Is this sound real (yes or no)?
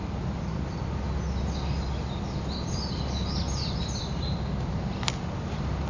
yes